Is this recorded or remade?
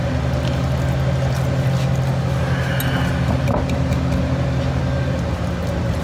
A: recorded